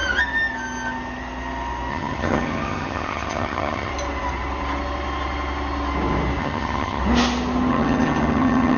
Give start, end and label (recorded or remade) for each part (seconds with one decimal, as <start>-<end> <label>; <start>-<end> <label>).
0.0-1.9 recorded; 1.9-3.9 remade; 3.9-6.4 recorded; 6.4-7.0 remade; 7.0-7.7 recorded; 7.7-8.8 remade